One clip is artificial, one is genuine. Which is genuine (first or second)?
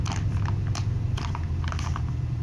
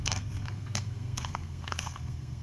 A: first